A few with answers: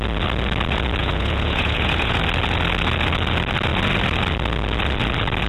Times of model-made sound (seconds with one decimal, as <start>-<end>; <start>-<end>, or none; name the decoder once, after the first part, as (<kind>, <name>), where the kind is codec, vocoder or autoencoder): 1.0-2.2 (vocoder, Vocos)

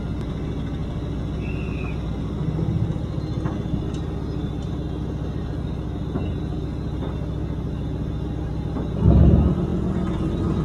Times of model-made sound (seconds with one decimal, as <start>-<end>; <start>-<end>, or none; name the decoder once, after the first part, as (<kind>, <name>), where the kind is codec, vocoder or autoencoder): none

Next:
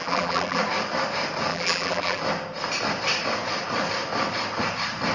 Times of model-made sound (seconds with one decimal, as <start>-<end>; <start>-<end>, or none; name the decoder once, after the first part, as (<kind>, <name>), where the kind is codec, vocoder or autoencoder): 0.0-0.6 (vocoder, BigVGAN v2); 1.5-2.2

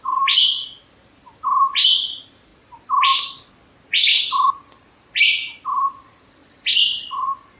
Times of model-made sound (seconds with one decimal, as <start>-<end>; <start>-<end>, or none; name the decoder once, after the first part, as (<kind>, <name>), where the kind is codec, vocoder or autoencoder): 0.0-2.5 (vocoder, BigVGAN v2); 5.2-7.6

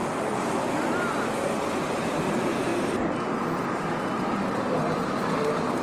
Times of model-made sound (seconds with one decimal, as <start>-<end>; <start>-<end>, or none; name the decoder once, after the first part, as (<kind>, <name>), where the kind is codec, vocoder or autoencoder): none

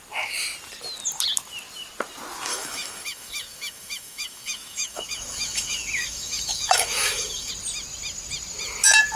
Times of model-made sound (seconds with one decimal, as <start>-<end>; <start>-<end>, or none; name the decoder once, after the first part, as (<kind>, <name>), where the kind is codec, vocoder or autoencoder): 2.5-7.5 (autoencoder, DAC-VAE)